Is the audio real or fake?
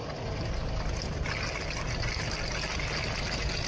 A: real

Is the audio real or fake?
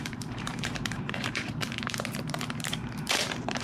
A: fake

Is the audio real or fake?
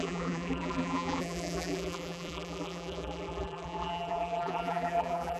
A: fake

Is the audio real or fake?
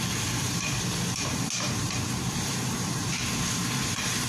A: fake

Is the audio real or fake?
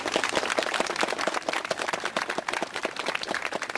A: real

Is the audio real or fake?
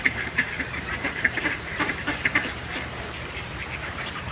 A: fake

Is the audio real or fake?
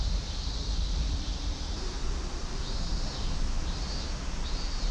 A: fake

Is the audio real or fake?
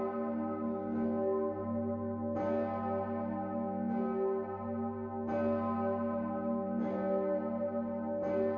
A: real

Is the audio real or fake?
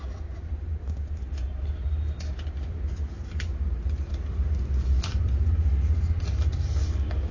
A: real